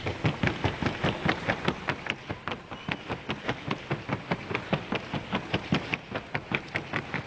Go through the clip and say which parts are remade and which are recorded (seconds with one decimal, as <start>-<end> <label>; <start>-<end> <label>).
0.0-7.3 recorded